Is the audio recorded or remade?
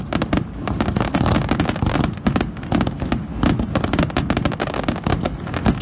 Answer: recorded